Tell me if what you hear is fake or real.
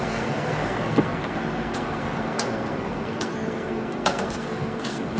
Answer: fake